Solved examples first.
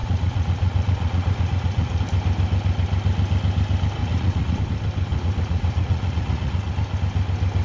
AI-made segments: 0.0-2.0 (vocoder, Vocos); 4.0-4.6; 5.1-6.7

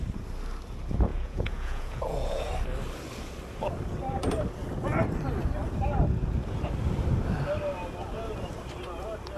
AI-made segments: 1.1-2.5 (vocoder, Vocos)

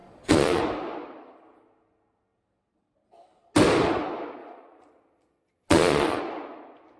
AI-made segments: 0.0-0.6 (vocoder, Vocos); 4.4-6.2

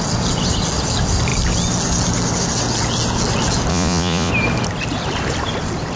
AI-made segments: 3.7-4.3 (vocoder, Vocos)

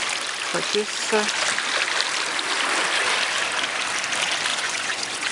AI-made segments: 4.5-5.3 (vocoder, Vocos)

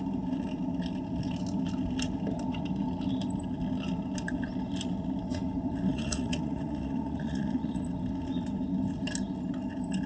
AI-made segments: 5.9-7.8 (vocoder, Vocos)